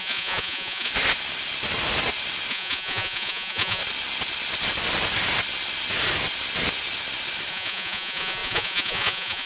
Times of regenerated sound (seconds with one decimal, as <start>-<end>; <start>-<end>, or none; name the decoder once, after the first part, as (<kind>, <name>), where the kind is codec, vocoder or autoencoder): 0.0-0.9 (vocoder, Vocos); 2.5-3.8; 7.5-9.5